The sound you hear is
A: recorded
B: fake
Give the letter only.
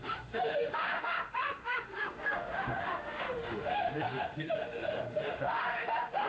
B